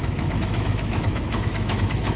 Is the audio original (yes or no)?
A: no